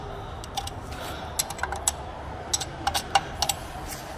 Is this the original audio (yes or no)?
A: yes